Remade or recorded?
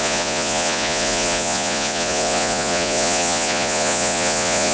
remade